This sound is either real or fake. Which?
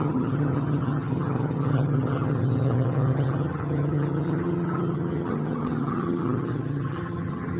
fake